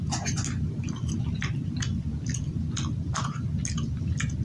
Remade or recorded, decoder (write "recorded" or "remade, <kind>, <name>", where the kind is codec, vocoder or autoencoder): recorded